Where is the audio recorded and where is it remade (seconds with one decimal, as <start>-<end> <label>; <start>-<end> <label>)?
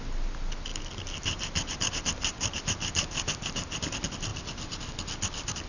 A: 0.0-5.7 recorded